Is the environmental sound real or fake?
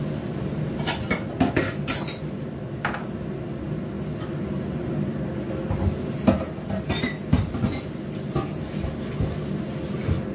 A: real